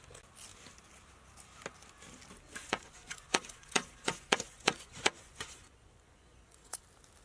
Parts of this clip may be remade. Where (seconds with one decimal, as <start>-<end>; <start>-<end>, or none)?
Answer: 2.6-6.8